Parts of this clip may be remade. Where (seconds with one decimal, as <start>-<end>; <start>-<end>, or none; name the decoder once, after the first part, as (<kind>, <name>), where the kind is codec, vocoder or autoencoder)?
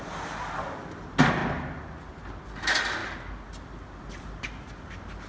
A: none